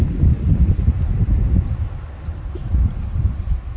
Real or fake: real